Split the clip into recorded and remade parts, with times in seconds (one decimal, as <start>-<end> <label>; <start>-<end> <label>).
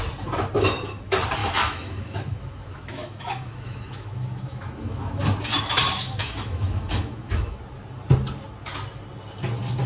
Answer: 0.0-1.4 recorded; 1.4-5.2 remade; 5.2-5.9 recorded; 5.9-7.6 remade; 7.6-9.9 recorded